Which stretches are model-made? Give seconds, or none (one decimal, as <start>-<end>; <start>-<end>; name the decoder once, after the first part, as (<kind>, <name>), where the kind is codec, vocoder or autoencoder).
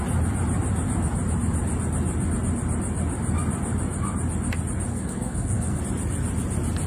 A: 4.9-5.8 (codec, SNAC)